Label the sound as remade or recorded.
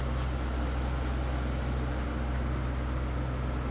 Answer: recorded